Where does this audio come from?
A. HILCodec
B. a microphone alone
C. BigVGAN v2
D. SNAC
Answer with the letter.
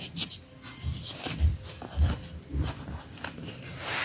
B